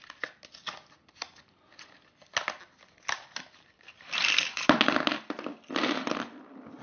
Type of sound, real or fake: real